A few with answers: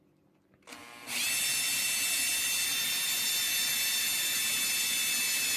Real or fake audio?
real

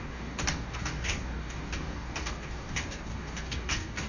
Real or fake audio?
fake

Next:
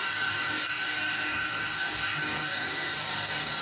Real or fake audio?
fake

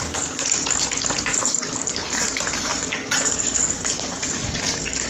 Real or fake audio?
fake